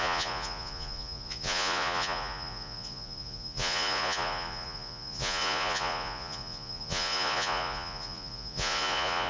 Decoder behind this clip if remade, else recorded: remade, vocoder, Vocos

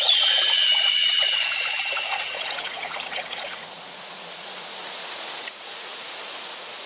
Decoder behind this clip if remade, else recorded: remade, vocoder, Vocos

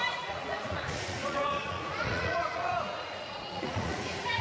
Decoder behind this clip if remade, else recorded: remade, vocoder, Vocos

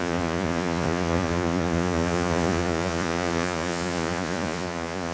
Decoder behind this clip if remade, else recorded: remade, vocoder, Vocos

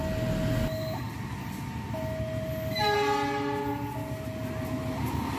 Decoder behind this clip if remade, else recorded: recorded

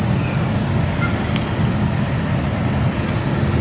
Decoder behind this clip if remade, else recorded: recorded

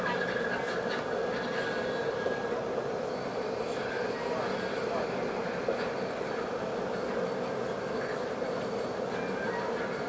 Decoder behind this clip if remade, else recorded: recorded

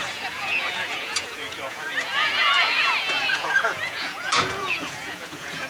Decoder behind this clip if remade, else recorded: remade, vocoder, Vocos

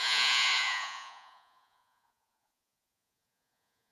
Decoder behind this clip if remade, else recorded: remade, vocoder, Vocos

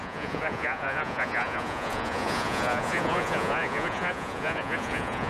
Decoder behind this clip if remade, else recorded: remade, vocoder, Vocos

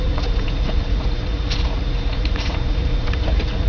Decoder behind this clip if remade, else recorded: remade, vocoder, Vocos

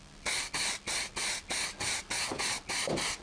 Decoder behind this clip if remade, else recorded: recorded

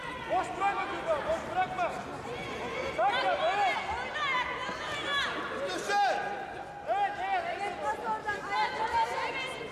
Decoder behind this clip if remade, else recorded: recorded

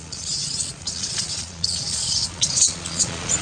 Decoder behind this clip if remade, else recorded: remade, vocoder, Vocos